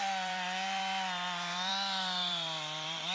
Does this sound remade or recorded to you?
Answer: remade